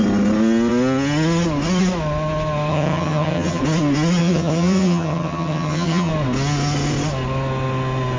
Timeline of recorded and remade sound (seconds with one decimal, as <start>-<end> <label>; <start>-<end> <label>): 0.0-2.7 recorded; 2.7-3.6 remade; 3.6-4.2 recorded; 4.2-6.1 remade; 6.1-8.2 recorded